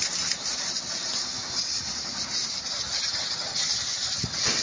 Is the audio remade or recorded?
recorded